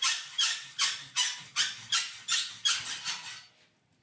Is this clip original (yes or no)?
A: yes